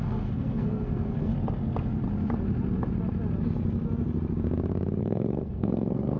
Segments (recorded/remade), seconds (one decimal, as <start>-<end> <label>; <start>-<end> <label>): 0.0-1.3 remade; 1.3-5.0 recorded; 5.0-6.2 remade